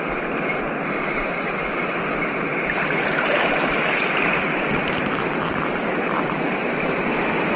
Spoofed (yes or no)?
no